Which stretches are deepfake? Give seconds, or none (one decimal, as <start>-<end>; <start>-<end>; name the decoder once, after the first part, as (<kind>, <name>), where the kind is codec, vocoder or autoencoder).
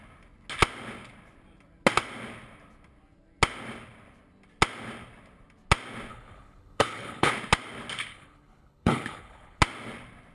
6.1-7.3 (codec, HILCodec); 8.1-9.6